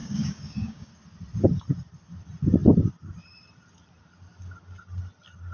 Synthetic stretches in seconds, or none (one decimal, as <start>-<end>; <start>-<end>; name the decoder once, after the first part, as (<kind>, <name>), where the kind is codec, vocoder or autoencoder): 0.0-0.9 (codec, DAC)